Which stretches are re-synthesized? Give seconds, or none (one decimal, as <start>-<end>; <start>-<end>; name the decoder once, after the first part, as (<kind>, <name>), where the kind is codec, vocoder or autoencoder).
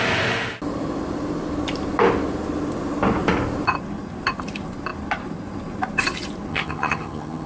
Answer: 6.5-7.5 (vocoder, HiFi-GAN)